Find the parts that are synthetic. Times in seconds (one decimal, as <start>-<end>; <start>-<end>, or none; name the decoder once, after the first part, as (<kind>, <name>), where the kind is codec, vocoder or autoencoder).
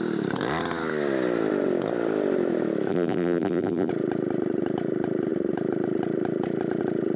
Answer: 2.9-3.9 (vocoder, BigVGAN v2)